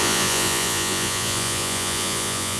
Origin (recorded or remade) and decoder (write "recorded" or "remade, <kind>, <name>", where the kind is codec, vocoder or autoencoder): remade, vocoder, Vocos